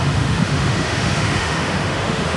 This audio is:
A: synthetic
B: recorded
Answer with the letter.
A